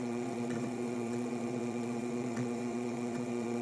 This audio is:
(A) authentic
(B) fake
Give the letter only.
B